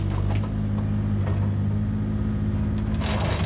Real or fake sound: real